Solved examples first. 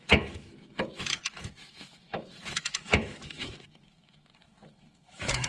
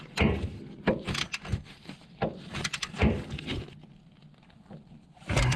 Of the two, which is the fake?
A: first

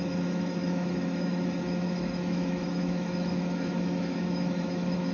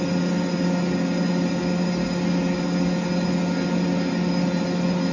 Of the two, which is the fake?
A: first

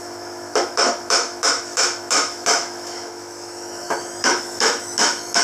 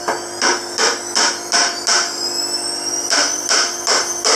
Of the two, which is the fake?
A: first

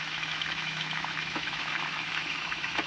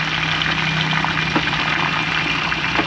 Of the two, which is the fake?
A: first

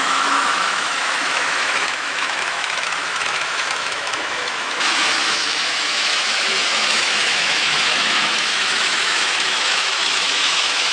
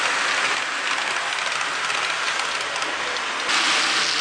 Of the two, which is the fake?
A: first